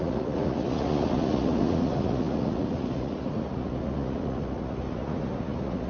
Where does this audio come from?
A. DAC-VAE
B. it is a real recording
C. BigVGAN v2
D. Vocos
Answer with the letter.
D